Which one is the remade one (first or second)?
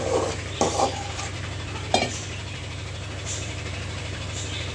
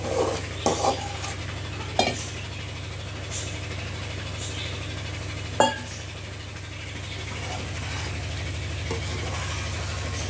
first